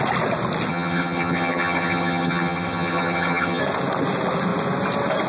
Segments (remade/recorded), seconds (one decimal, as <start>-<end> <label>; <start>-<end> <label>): 0.0-0.7 recorded; 0.7-3.6 remade; 3.6-5.3 recorded